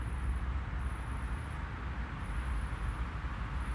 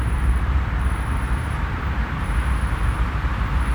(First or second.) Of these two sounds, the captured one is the first